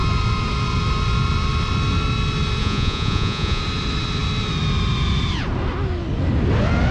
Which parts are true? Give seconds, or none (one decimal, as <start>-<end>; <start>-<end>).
0.0-2.6; 3.6-6.9